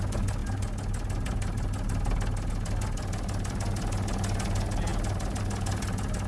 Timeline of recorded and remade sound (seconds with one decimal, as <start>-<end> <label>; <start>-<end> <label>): 0.0-6.3 recorded